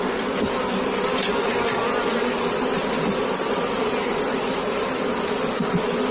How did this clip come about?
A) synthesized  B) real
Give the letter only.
B